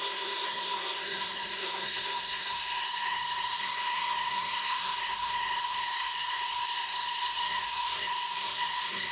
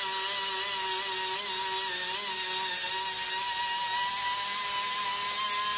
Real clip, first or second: second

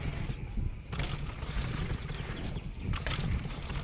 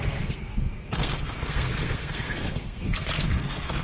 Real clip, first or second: first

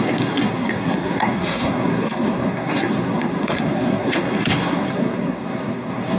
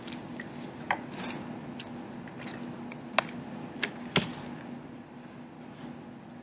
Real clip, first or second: second